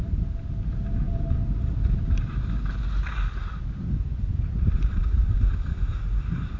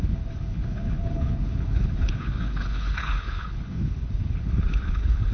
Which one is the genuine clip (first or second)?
first